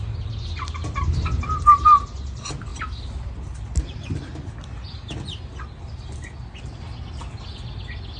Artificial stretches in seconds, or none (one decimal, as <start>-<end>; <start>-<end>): none